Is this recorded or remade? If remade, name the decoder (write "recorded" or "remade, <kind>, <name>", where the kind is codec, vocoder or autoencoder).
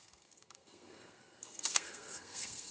remade, codec, SNAC